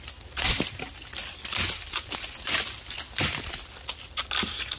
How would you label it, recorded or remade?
recorded